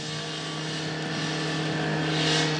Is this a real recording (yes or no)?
yes